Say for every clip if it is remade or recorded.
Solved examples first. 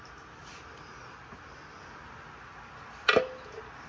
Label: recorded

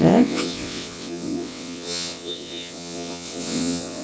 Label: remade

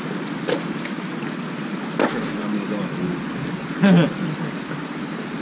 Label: remade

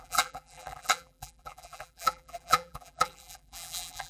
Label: remade